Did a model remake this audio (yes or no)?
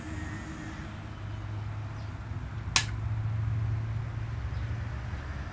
no